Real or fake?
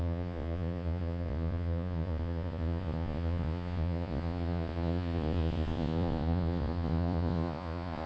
fake